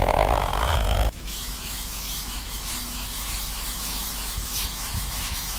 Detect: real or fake fake